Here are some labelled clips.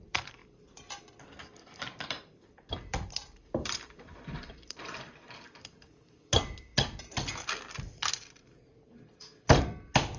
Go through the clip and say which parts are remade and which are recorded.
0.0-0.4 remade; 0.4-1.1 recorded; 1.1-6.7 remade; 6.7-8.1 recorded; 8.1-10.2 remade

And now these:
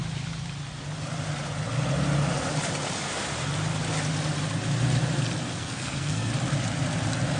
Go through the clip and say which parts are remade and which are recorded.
0.0-5.5 recorded; 5.5-6.3 remade; 6.3-7.4 recorded

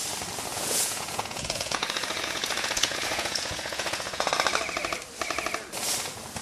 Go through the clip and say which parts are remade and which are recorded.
0.0-0.5 recorded; 0.5-4.3 remade; 4.3-6.4 recorded

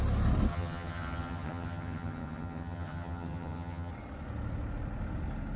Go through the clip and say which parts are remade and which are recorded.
0.0-0.5 recorded; 0.5-3.9 remade; 3.9-5.6 recorded

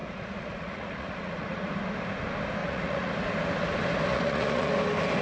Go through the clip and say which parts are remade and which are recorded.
0.0-1.7 remade; 1.7-2.6 recorded; 2.6-3.1 remade; 3.1-4.1 recorded; 4.1-4.7 remade; 4.7-5.2 recorded

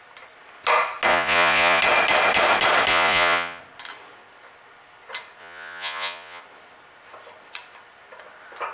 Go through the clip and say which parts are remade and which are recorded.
0.0-1.1 recorded; 1.1-1.8 remade; 1.8-2.9 recorded; 2.9-3.6 remade; 3.6-5.4 recorded; 5.4-6.4 remade; 6.4-8.7 recorded

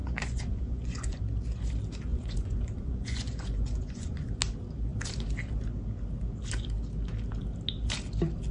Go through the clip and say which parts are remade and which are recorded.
0.0-1.2 remade; 1.2-2.1 recorded; 2.1-4.4 remade; 4.4-8.5 recorded

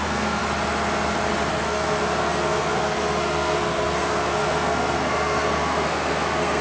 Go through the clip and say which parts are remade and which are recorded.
0.0-0.4 remade; 0.4-1.5 recorded; 1.5-6.6 remade